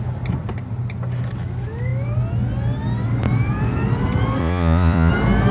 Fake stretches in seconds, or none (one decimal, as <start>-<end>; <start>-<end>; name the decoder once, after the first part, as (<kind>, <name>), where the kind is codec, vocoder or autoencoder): 4.4-5.1 (vocoder, Vocos)